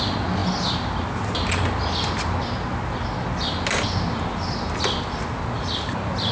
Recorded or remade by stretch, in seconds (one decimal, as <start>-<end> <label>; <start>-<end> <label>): 0.0-6.3 recorded